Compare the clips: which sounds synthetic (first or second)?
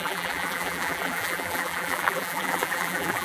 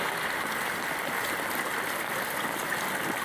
first